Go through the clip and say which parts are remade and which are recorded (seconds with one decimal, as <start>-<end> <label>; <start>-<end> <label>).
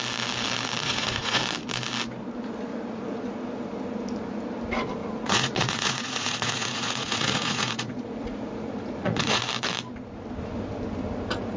0.0-0.8 recorded; 0.8-1.4 remade; 1.4-2.7 recorded; 2.7-3.3 remade; 3.3-5.0 recorded; 5.0-9.4 remade; 9.4-11.6 recorded